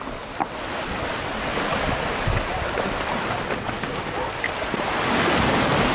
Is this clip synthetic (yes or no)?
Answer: no